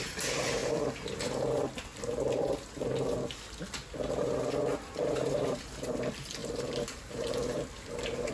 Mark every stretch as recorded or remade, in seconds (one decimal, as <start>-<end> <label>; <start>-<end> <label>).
0.0-1.9 recorded; 1.9-2.5 remade; 2.5-6.4 recorded; 6.4-8.3 remade